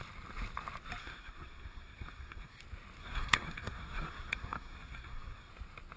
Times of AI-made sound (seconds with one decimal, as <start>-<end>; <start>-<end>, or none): 1.0-2.6; 3.0-5.5